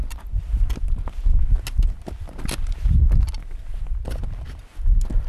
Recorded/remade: recorded